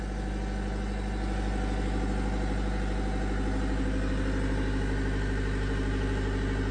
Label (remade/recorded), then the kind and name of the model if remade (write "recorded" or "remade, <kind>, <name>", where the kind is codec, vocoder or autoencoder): recorded